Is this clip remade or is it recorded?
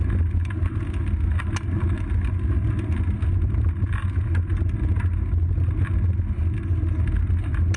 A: recorded